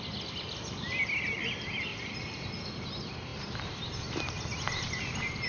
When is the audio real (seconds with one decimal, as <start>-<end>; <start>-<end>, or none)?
0.0-1.9; 2.4-3.3; 4.1-5.5